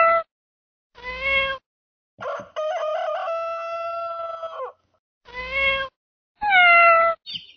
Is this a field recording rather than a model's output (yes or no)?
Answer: yes